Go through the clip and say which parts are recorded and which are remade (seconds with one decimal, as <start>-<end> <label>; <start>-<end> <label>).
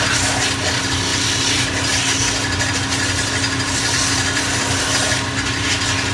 0.0-6.1 recorded